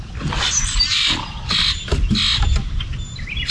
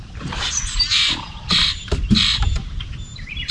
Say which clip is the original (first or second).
first